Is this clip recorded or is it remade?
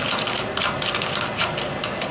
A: recorded